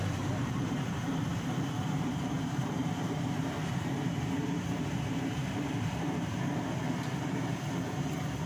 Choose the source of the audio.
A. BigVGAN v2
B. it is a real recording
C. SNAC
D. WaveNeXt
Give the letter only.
A